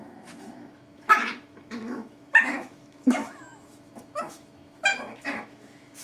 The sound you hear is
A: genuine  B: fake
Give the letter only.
B